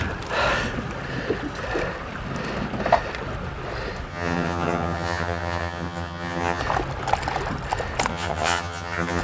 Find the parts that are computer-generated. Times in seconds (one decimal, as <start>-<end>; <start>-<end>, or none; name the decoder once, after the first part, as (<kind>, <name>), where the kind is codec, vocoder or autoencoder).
4.1-6.6 (vocoder, HiFi-GAN); 8.1-9.2